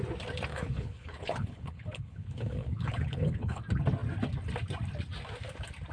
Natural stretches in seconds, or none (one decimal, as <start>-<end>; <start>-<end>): 0.0-0.5; 3.6-5.9